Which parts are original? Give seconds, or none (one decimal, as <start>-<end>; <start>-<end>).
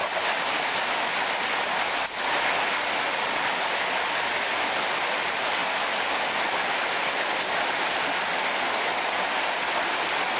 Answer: 0.0-10.4